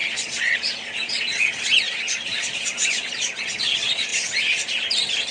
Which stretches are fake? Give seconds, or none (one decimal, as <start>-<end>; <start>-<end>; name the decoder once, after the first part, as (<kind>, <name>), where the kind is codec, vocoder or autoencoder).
0.0-4.1 (vocoder, Vocos)